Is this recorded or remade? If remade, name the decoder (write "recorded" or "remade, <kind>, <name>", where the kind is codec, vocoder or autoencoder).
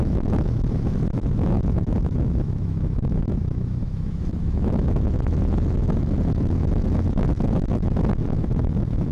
remade, autoencoder, DAC-VAE